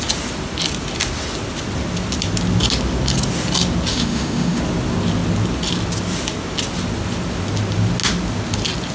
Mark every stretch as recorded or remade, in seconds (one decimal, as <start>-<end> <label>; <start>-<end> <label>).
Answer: 0.0-3.9 recorded; 3.9-4.6 remade; 4.6-8.9 recorded